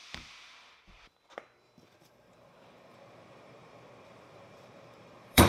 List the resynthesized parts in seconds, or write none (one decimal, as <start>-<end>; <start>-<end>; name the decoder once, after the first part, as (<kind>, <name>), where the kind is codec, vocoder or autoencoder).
2.0-5.5 (vocoder, BigVGAN v2)